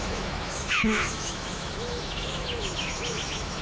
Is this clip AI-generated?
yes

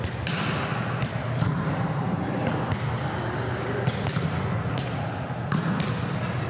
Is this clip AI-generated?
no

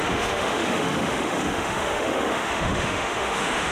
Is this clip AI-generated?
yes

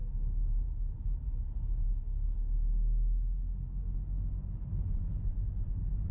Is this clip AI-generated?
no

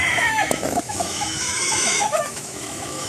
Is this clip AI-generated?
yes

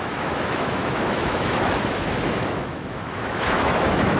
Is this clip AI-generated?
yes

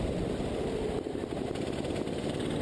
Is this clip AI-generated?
no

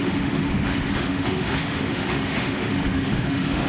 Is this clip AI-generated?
yes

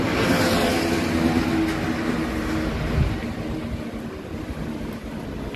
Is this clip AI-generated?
no